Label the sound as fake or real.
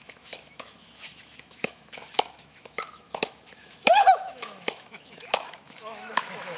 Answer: fake